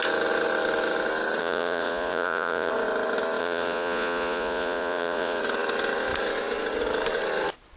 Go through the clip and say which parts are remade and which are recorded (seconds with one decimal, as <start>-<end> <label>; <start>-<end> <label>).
0.0-1.4 recorded; 1.4-2.7 remade; 2.7-3.4 recorded; 3.4-5.4 remade; 5.4-7.8 recorded